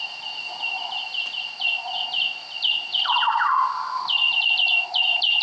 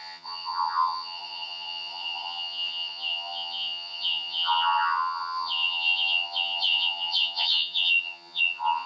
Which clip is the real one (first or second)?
first